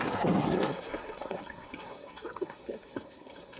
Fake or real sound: fake